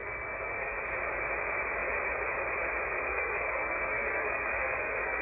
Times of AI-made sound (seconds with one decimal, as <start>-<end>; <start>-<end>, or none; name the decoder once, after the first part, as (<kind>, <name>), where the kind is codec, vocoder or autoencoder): 0.0-0.8 (codec, SNAC); 3.1-5.2